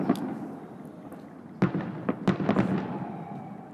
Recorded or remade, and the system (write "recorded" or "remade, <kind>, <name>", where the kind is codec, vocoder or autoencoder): recorded